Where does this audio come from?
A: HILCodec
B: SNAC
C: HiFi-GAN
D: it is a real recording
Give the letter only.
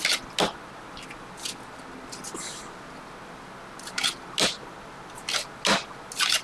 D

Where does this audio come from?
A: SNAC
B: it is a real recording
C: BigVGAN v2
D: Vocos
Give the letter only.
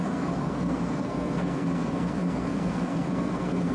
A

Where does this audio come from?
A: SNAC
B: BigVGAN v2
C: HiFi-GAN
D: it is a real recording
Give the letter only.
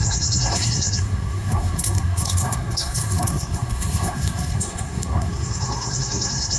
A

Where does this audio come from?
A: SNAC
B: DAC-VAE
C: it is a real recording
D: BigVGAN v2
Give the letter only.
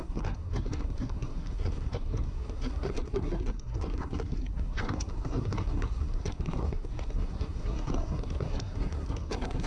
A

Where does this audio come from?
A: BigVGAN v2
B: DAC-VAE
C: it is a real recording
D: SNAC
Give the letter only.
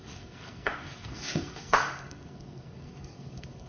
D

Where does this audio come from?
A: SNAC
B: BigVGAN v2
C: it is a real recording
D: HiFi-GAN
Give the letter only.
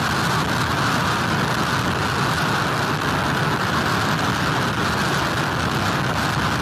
C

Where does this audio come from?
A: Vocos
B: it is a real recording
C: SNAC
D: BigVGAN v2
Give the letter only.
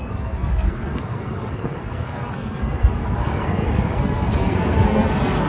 C